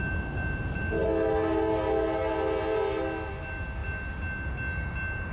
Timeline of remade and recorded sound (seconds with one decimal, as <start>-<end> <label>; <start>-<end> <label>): 0.0-5.3 recorded